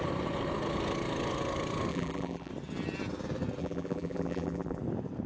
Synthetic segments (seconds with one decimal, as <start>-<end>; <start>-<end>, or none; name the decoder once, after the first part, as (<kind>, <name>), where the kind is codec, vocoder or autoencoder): 1.9-2.5 (vocoder, BigVGAN v2); 3.6-4.8